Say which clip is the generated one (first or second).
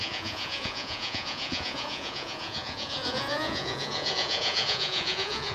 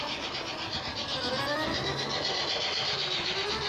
first